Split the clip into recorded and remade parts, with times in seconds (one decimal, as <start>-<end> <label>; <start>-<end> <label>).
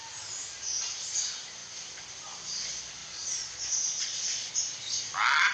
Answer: 0.0-3.0 recorded; 3.0-4.5 remade; 4.5-5.5 recorded